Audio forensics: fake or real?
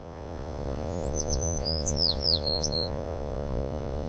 fake